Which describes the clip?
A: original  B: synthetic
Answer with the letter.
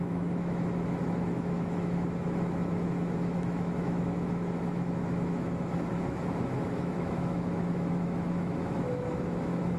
B